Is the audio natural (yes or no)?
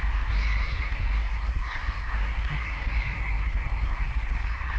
no